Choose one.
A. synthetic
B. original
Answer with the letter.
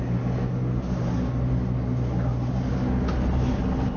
B